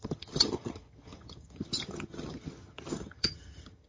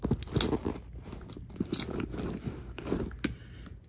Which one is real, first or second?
second